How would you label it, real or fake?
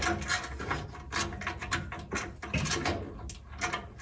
real